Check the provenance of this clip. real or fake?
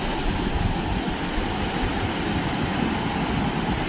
real